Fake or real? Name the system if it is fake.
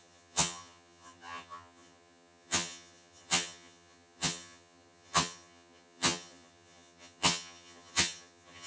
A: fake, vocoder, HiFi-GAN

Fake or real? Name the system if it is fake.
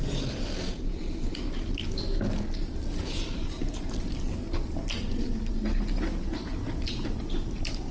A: real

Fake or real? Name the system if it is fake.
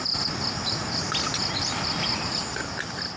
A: real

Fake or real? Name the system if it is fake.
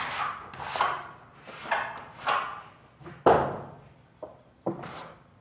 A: real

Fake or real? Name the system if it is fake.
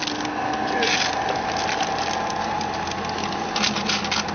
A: real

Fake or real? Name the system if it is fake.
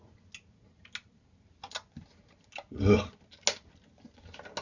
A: real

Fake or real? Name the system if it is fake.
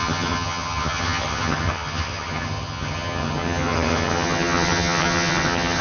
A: fake, vocoder, HiFi-GAN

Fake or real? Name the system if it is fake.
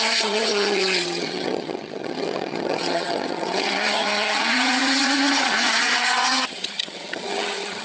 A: fake, vocoder, HiFi-GAN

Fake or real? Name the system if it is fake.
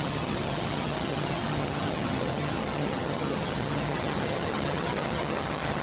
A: fake, vocoder, HiFi-GAN